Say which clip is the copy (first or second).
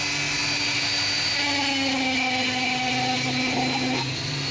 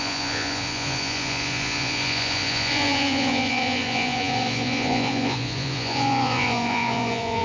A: second